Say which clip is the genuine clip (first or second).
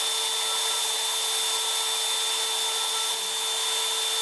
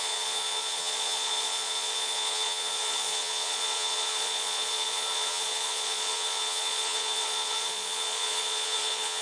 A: first